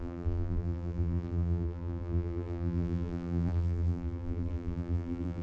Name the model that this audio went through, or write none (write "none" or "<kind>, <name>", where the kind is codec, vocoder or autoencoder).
vocoder, BigVGAN v2